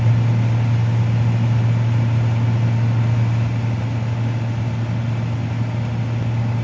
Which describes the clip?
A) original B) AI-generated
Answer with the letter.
A